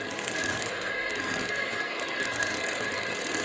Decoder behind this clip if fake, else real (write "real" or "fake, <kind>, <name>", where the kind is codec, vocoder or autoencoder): fake, codec, SNAC